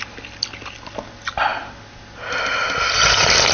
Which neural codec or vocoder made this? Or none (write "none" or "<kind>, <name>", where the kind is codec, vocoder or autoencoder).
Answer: none